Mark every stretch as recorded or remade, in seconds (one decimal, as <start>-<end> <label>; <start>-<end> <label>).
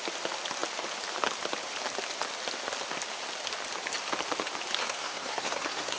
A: 0.0-4.8 recorded; 4.8-6.0 remade